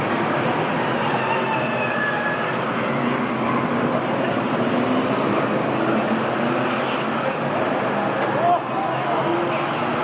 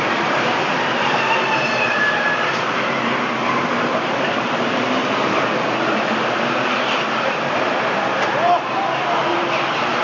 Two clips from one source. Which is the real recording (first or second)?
first